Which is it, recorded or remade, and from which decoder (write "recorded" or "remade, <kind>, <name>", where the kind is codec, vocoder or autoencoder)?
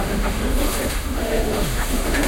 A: remade, autoencoder, DAC-VAE